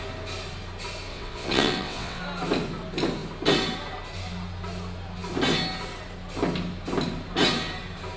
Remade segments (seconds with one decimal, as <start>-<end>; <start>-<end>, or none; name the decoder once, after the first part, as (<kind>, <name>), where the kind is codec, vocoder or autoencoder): 1.1-2.2 (vocoder, WaveNeXt)